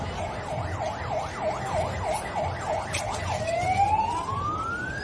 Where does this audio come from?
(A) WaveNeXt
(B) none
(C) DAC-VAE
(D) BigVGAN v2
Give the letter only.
B